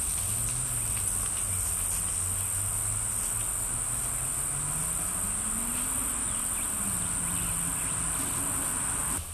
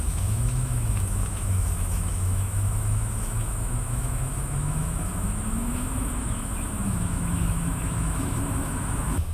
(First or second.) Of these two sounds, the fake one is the second